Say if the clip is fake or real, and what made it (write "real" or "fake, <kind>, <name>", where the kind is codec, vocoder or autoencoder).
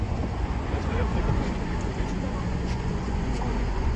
fake, vocoder, Vocos